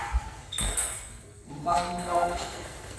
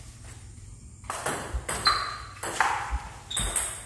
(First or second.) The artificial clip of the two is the first